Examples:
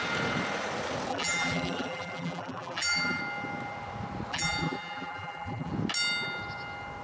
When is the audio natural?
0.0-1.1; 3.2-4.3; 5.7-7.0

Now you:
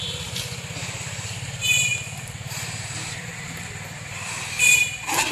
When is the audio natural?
0.0-1.9